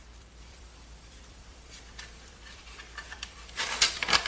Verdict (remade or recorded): remade